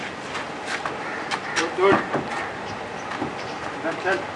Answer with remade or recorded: recorded